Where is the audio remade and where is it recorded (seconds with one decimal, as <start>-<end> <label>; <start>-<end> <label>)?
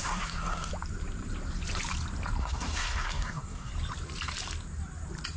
0.0-0.7 remade; 0.7-2.4 recorded; 2.4-3.7 remade; 3.7-5.4 recorded